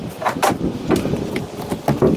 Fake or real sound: real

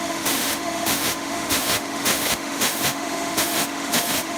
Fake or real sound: fake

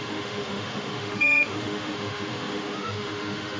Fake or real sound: fake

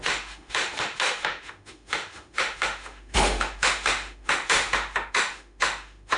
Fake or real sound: fake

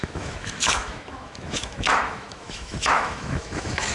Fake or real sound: fake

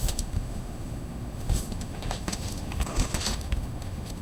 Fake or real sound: fake